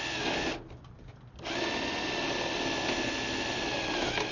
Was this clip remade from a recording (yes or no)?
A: no